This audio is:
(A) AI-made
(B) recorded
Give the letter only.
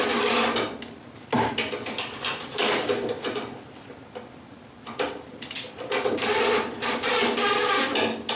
B